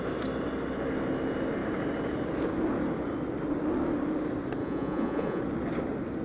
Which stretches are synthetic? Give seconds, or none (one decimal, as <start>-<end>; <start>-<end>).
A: 4.6-5.4